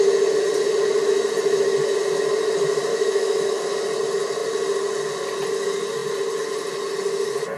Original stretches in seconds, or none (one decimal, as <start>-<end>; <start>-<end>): 0.0-2.9; 3.6-7.6